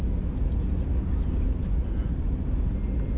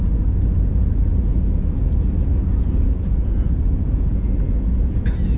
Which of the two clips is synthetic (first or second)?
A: second